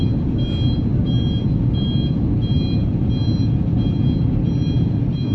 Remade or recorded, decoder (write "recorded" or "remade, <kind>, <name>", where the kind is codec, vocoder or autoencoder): recorded